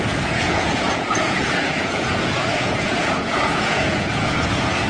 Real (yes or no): no